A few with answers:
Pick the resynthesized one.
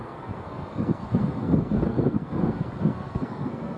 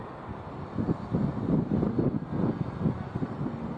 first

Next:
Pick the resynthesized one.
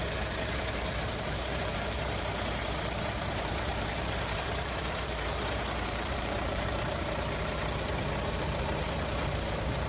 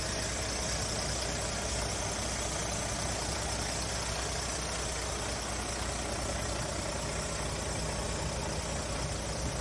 first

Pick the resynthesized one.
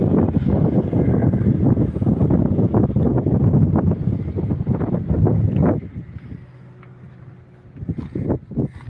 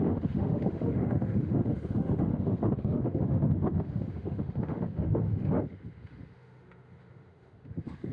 second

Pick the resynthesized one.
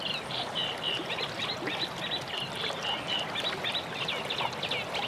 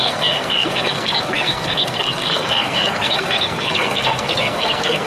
second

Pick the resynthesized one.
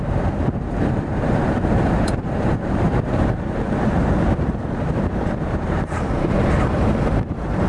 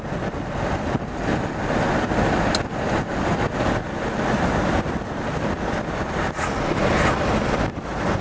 first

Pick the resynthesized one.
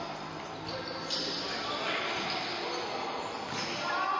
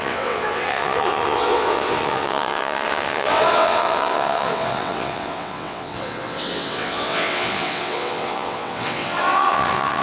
second